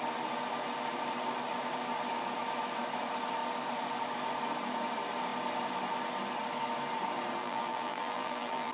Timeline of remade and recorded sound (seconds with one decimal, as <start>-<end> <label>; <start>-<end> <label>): 0.0-7.4 recorded; 7.4-8.7 remade